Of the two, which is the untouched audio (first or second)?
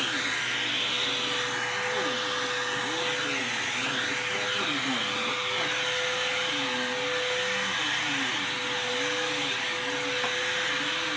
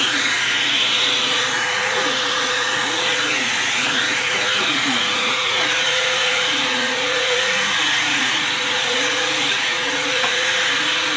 first